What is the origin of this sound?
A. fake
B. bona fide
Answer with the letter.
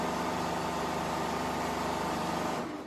B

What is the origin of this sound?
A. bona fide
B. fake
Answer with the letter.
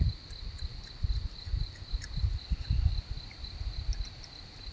A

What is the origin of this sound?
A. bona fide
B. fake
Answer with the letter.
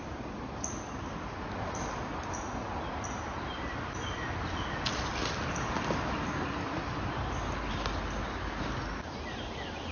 A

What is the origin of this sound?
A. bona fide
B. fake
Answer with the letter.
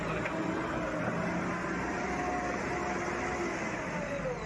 A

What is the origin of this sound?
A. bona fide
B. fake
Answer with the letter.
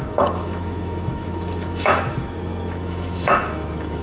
B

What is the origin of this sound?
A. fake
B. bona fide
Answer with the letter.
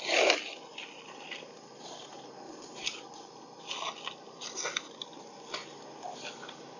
B